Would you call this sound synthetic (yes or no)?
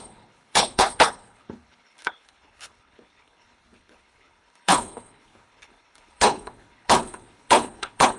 yes